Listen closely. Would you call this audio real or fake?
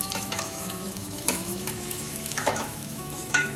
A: fake